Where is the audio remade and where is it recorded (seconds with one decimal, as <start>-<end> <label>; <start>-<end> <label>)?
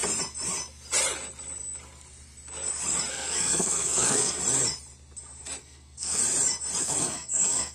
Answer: 0.0-3.1 recorded; 3.1-4.4 remade; 4.4-5.6 recorded; 5.6-6.2 remade; 6.2-6.8 recorded; 6.8-7.7 remade